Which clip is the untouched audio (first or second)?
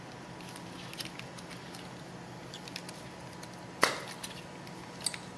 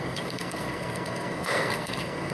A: first